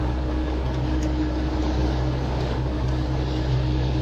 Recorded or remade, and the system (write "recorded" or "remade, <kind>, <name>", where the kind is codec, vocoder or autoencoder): remade, codec, DAC